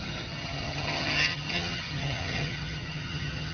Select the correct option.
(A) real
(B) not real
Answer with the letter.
B